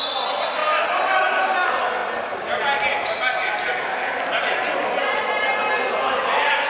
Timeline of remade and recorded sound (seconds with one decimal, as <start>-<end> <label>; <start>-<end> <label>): 0.0-6.7 recorded